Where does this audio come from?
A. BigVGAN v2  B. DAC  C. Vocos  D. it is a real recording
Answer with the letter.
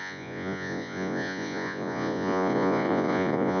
C